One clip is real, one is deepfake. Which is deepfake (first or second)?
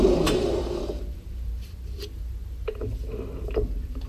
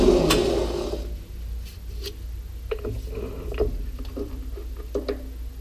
first